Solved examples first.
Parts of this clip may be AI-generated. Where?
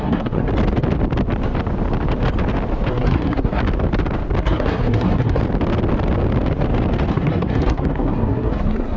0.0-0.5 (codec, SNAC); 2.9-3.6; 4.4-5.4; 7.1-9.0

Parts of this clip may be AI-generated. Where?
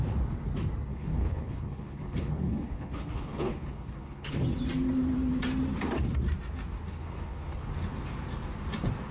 0.9-4.4 (codec, HILCodec); 7.0-7.7